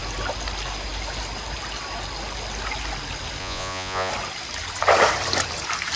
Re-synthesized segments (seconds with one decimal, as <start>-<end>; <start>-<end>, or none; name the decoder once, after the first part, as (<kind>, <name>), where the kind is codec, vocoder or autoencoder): 3.4-4.1 (vocoder, Vocos)